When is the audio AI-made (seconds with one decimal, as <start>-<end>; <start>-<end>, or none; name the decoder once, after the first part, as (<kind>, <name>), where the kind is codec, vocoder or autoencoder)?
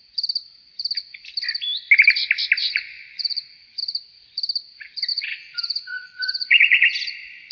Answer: 2.6-3.8 (vocoder, Vocos); 5.1-7.5